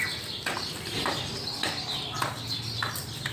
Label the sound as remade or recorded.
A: recorded